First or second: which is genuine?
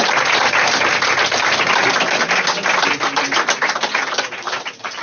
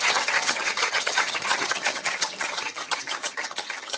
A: first